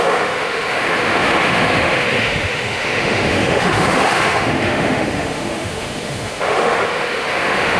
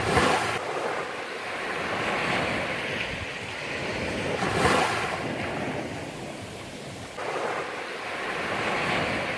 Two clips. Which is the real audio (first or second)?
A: second